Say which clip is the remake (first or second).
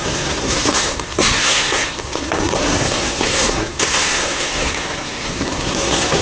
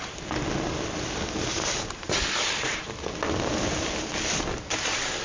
first